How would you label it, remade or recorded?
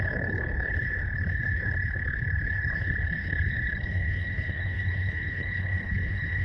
remade